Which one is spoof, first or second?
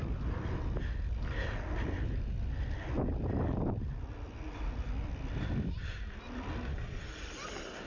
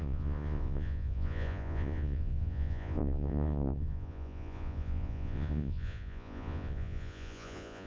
second